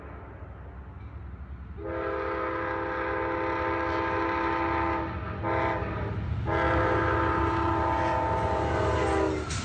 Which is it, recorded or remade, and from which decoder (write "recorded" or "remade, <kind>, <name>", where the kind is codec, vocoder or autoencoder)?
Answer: recorded